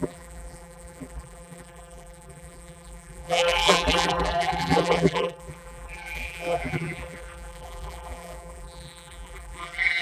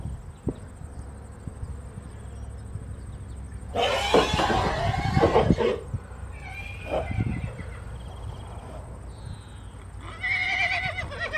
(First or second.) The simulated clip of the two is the first